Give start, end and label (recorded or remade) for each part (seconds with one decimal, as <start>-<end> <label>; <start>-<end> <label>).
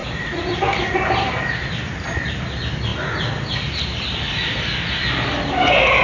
0.0-6.0 recorded